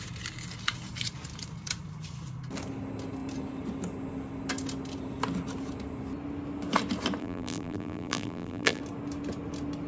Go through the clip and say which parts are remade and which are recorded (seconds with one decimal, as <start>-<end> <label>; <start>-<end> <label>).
0.0-7.2 recorded; 7.2-8.8 remade; 8.8-9.9 recorded